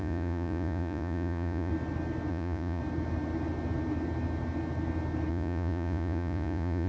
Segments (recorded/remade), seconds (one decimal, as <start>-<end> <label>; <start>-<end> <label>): 0.0-1.7 remade; 1.7-2.3 recorded; 2.3-2.8 remade; 2.8-5.3 recorded; 5.3-6.9 remade